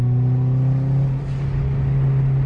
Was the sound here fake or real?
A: real